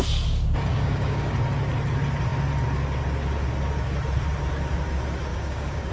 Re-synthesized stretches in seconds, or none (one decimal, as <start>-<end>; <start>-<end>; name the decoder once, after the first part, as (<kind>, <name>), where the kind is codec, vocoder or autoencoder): 0.7-1.3 (codec, DAC); 5.3-5.9